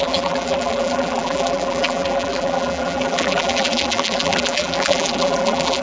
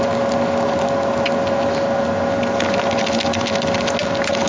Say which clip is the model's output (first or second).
first